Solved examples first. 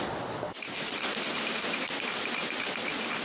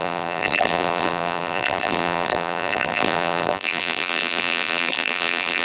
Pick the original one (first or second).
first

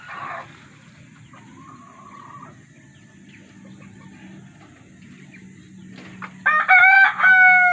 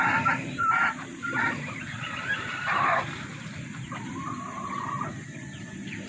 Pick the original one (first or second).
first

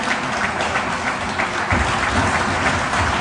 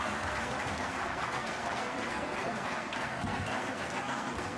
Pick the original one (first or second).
first